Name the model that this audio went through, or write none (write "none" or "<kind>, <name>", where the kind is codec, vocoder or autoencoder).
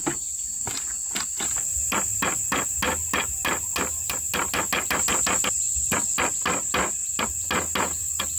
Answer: none